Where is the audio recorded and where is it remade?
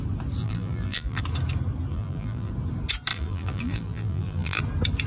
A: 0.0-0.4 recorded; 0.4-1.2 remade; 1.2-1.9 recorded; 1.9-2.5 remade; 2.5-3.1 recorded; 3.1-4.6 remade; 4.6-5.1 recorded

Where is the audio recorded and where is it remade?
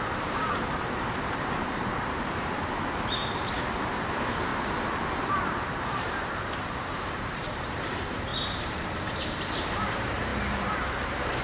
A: 0.0-4.5 remade; 4.5-5.3 recorded; 5.3-10.3 remade; 10.3-10.9 recorded; 10.9-11.4 remade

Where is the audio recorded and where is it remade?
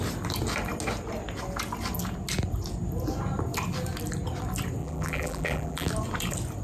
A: 0.0-4.8 recorded; 4.8-5.9 remade; 5.9-6.6 recorded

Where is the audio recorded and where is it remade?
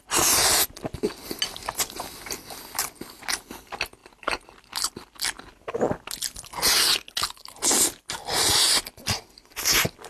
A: 0.0-4.0 recorded; 4.0-4.9 remade; 4.9-10.1 recorded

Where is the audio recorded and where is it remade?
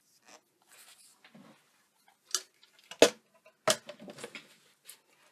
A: 0.0-5.3 recorded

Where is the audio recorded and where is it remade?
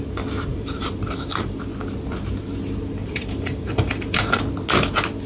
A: 0.0-0.5 recorded; 0.5-1.6 remade; 1.6-3.0 recorded; 3.0-4.4 remade; 4.4-5.3 recorded